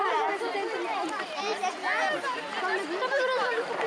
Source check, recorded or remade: recorded